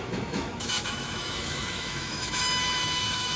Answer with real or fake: fake